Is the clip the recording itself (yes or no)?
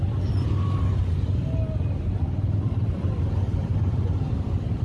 yes